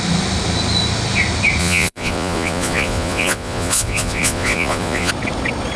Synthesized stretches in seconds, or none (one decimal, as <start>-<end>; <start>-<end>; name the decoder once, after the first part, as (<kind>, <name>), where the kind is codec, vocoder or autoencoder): 1.6-5.1 (vocoder, Vocos)